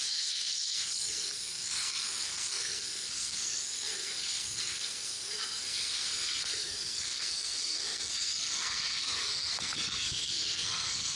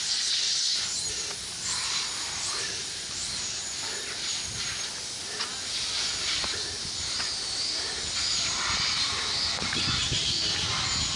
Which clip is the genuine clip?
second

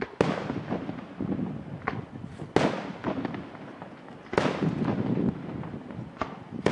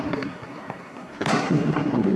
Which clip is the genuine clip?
first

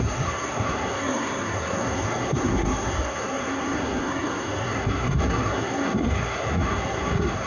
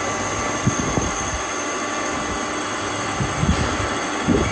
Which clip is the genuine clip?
second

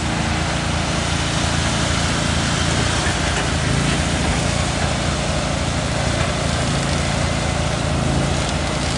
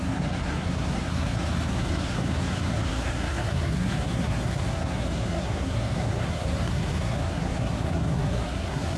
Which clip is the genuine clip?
first